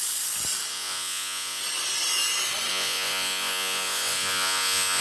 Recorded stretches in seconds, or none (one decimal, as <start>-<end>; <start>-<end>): 0.0-0.7; 1.6-2.7

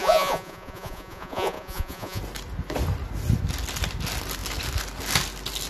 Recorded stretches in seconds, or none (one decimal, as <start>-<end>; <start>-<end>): 2.2-5.7

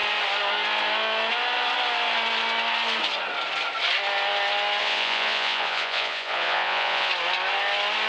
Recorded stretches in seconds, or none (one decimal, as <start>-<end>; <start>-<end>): 0.0-4.8; 7.1-8.1

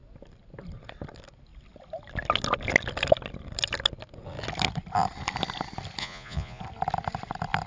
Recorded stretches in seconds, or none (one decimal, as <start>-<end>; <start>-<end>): 0.0-6.0; 6.6-7.7

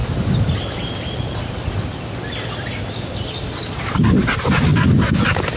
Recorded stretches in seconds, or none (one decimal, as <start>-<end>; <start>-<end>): 0.0-5.6

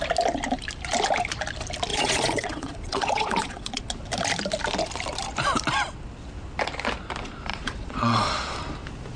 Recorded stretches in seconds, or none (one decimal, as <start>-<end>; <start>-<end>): 0.0-1.9; 3.8-7.5; 8.5-9.2

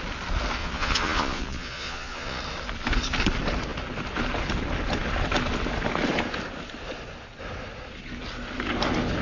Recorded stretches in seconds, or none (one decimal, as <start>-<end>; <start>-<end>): 0.0-0.6; 2.4-9.2